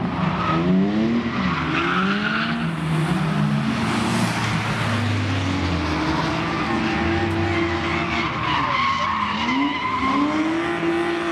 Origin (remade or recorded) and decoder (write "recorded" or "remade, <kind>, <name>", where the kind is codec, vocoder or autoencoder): recorded